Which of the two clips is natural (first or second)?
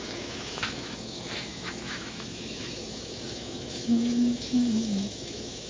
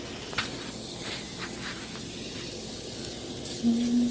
second